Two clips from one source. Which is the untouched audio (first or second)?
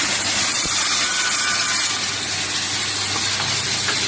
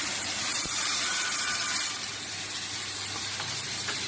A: first